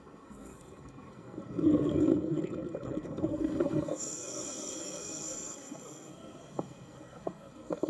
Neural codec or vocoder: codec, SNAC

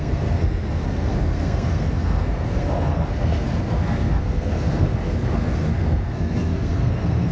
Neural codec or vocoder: codec, SNAC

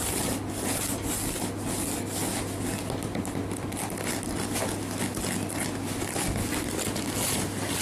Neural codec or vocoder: none